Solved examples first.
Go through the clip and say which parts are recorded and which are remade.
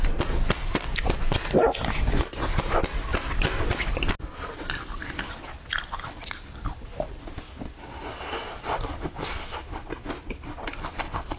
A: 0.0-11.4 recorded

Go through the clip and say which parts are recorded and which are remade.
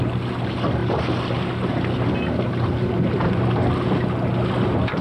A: 0.0-5.0 recorded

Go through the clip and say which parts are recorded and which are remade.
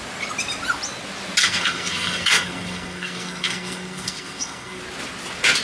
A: 0.0-1.4 recorded; 1.4-4.8 remade; 4.8-5.6 recorded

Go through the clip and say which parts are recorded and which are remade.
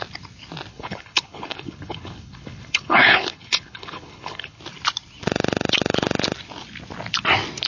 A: 0.0-0.7 recorded; 0.7-4.6 remade; 4.6-7.7 recorded